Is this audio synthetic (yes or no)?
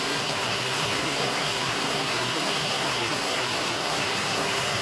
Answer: yes